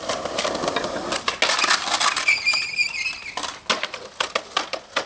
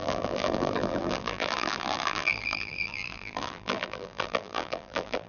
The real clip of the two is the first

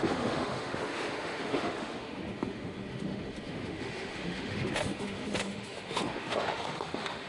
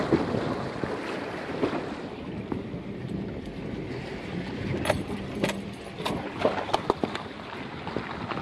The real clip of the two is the second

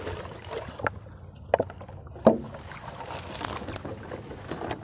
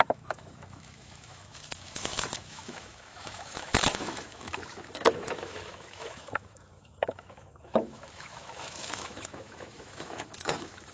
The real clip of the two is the first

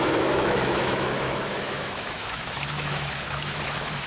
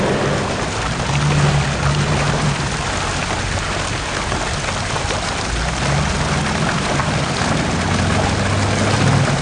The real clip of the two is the second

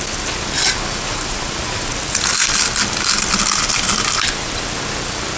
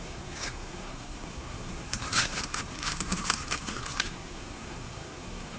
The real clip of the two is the first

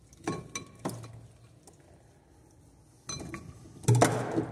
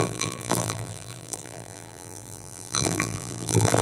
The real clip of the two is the first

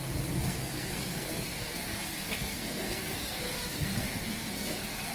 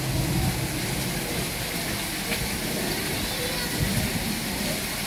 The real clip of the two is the second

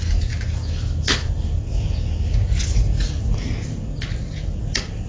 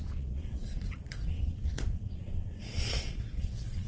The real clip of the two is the first